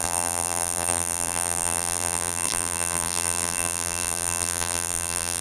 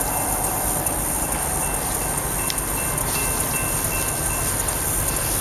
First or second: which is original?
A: second